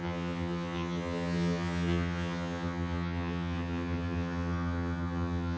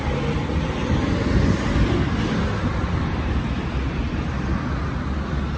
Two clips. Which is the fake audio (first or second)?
first